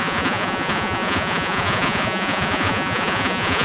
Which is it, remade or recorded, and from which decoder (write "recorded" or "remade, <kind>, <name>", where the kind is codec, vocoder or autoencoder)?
remade, vocoder, Vocos